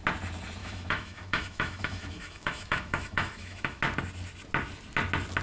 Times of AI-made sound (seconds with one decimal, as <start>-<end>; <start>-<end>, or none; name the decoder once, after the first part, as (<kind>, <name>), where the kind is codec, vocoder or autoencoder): 0.6-3.8 (autoencoder, DAC-VAE)